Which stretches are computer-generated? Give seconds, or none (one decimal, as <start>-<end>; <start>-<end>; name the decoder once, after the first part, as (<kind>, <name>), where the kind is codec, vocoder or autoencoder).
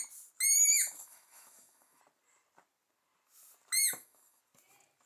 0.6-2.0 (autoencoder, DAC-VAE); 3.8-4.4